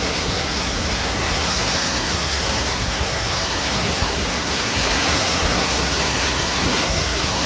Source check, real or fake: fake